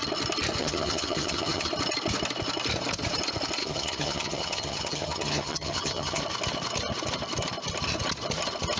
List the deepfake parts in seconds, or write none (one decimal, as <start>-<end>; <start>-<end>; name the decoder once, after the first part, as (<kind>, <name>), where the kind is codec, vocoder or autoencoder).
0.6-1.7 (vocoder, HiFi-GAN); 3.6-6.2